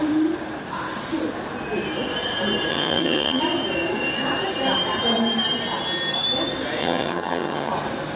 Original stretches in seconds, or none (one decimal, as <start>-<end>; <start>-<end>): 0.0-2.7; 3.4-6.8; 7.7-8.2